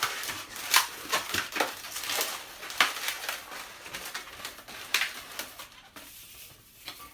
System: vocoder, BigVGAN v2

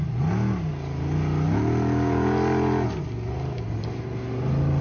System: none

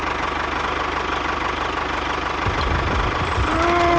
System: none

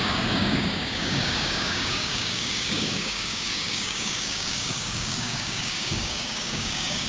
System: codec, DAC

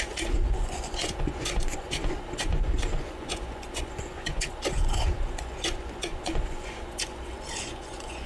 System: vocoder, Vocos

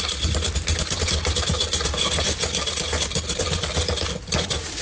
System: none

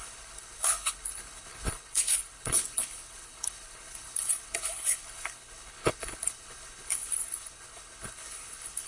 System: codec, HILCodec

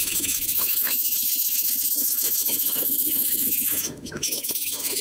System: autoencoder, DAC-VAE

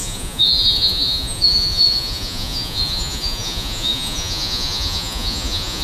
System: vocoder, Vocos